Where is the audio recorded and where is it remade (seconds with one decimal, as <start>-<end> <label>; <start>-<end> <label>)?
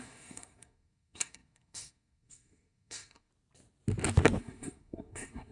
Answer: 0.0-3.3 remade; 3.3-4.4 recorded; 4.4-5.5 remade